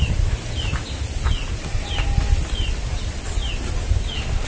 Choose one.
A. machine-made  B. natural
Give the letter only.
B